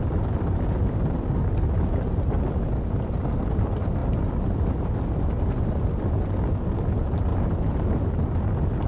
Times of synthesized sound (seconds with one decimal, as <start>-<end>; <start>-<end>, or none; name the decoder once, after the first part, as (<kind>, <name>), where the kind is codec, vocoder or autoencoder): none